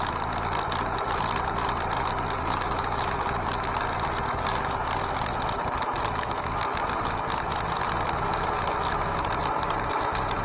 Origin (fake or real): real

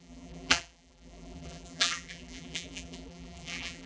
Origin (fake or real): fake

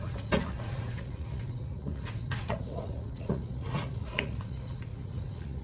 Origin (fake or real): fake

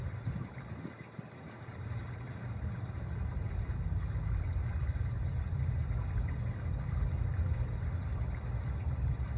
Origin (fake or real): real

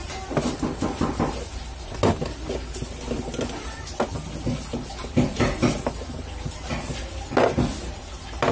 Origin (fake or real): real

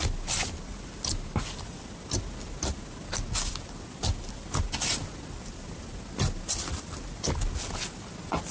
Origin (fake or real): real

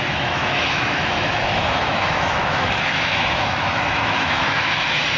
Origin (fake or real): fake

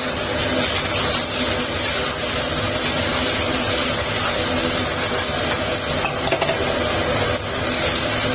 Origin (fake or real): real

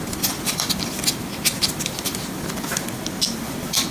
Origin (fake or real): real